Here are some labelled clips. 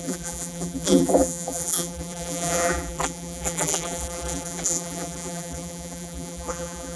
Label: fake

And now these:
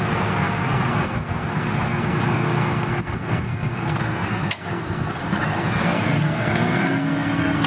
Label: fake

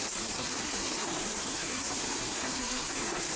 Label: fake